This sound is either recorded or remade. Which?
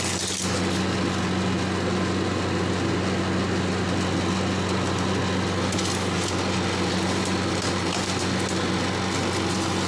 recorded